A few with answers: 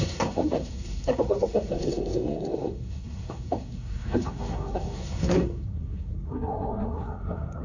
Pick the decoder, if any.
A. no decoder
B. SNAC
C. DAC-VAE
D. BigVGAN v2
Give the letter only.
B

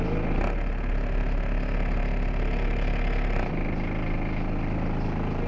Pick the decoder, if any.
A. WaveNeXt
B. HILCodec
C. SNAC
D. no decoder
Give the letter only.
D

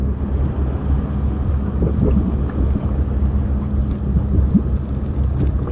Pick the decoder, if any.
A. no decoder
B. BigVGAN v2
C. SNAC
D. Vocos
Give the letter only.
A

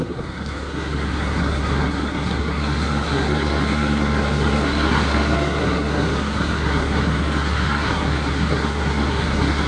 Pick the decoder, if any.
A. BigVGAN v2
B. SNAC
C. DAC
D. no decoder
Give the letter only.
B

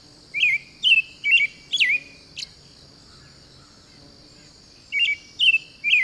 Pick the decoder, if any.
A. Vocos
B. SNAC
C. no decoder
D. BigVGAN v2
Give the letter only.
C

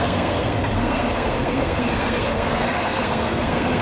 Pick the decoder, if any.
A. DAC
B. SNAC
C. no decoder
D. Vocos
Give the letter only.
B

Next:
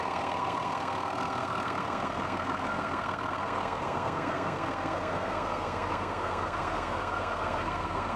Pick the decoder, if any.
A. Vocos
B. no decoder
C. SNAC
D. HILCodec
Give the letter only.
C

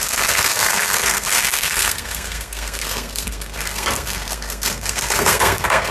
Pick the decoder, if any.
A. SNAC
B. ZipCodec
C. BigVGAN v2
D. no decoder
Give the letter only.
A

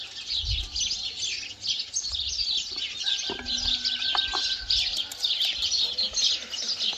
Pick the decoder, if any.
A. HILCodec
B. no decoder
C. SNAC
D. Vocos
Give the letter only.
B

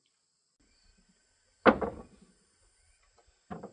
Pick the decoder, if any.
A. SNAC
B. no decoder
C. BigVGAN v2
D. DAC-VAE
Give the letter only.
B